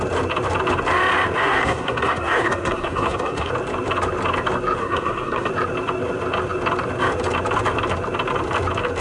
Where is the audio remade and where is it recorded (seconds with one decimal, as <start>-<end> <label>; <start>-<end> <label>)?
0.0-1.4 recorded; 1.4-3.5 remade; 3.5-4.8 recorded; 4.8-5.5 remade; 5.5-9.0 recorded